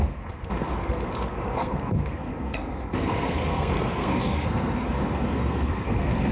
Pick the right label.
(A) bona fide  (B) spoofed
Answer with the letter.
B